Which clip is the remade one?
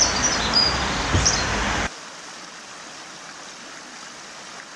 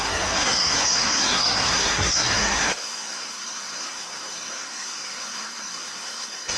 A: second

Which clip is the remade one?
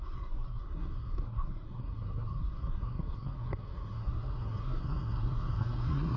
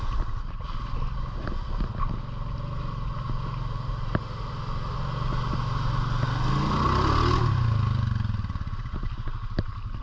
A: first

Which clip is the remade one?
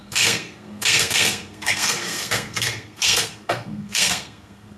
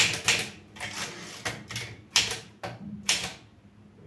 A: first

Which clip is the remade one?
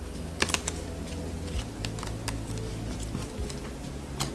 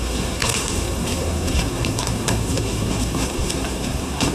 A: second